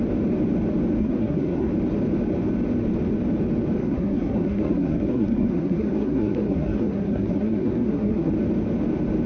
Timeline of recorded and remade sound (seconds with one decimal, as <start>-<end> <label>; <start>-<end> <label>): 0.0-1.0 recorded; 1.0-1.7 remade; 1.7-3.8 recorded; 3.8-8.3 remade; 8.3-9.3 recorded